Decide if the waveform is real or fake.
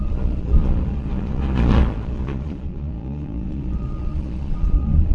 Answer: fake